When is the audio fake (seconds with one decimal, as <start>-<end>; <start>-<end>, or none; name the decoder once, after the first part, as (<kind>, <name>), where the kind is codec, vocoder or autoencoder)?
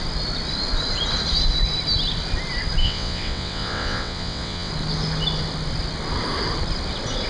2.8-4.7 (vocoder, WaveNeXt)